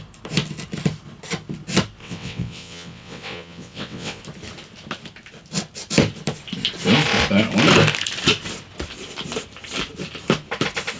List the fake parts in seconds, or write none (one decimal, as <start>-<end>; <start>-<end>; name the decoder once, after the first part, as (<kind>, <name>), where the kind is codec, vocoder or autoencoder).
2.0-4.2 (vocoder, WaveNeXt)